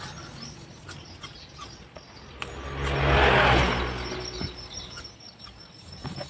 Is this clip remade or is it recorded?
recorded